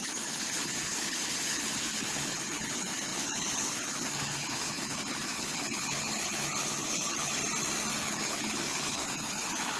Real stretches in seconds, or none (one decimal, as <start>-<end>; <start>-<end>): 7.4-7.9